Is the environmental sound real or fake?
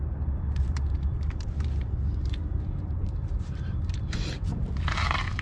fake